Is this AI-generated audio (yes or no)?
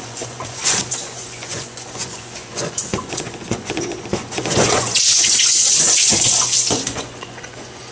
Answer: yes